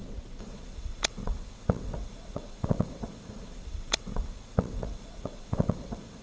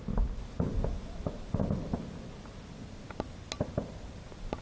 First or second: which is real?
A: second